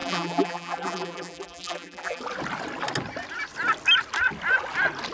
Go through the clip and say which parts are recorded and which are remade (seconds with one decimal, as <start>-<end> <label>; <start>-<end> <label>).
0.0-2.2 remade; 2.2-5.1 recorded

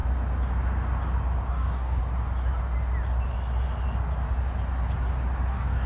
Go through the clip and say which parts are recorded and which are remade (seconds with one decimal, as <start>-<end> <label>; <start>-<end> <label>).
0.0-1.5 recorded; 1.5-2.0 remade; 2.0-5.5 recorded; 5.5-5.9 remade